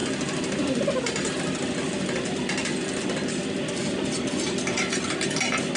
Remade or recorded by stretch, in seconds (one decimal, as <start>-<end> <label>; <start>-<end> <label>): 0.0-5.8 recorded